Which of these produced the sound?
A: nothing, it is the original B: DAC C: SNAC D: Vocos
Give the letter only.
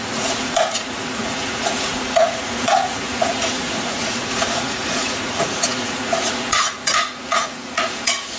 D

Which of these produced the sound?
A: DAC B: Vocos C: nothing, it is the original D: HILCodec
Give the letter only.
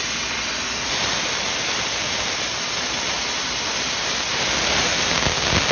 C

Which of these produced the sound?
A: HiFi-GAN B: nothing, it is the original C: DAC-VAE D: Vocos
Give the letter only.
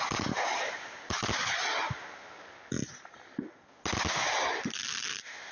B